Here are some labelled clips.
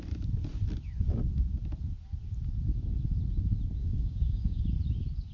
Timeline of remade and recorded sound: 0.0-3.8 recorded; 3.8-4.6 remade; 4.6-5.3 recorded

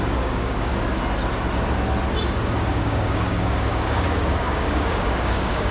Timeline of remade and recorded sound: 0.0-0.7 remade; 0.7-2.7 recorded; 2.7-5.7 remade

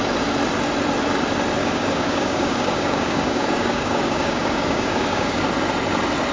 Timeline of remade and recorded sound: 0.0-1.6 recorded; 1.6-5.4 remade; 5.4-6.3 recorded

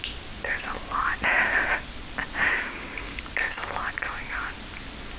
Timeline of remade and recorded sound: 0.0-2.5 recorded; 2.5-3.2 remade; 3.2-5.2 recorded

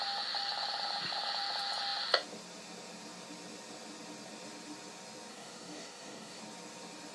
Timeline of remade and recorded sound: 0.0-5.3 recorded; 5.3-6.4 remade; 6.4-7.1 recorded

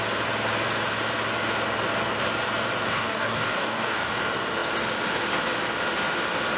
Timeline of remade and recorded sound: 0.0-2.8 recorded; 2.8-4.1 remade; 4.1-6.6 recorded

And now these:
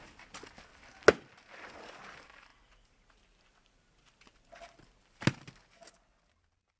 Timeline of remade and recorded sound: 0.0-6.8 recorded